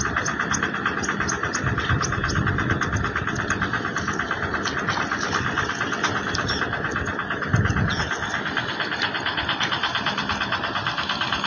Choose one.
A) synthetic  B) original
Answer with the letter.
B